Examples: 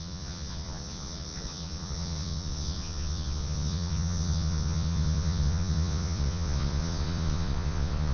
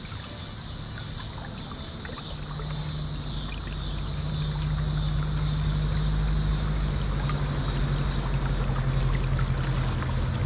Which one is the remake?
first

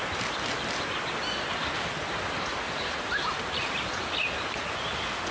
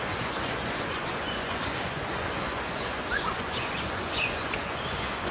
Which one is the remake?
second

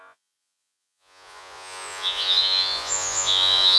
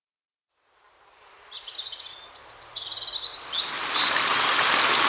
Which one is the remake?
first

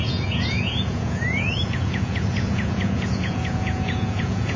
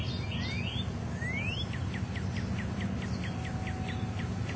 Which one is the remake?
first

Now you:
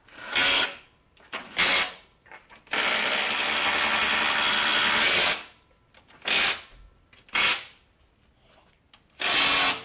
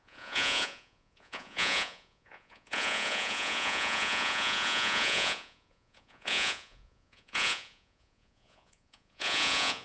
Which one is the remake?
second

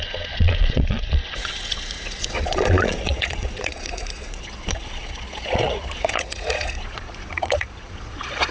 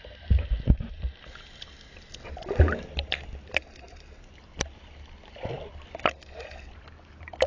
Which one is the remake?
first